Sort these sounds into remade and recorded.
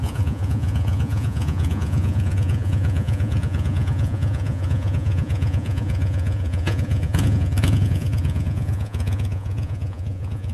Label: remade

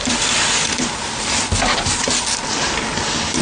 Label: recorded